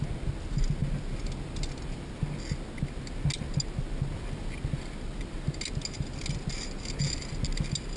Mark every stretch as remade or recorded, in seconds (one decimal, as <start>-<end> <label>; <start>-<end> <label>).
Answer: 0.0-8.0 recorded